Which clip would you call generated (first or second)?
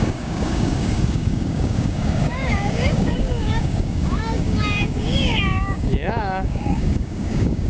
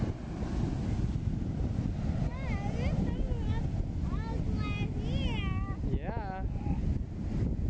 first